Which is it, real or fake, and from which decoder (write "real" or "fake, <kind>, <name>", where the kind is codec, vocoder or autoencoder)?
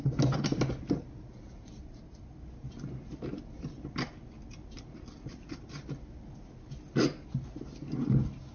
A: real